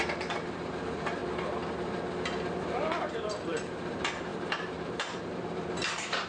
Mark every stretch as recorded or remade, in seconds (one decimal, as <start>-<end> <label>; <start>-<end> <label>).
0.0-1.2 remade; 1.2-2.6 recorded; 2.6-6.3 remade